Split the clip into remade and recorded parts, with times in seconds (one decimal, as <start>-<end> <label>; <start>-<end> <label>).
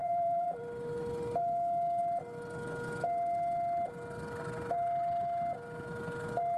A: 0.0-0.6 remade; 0.6-6.6 recorded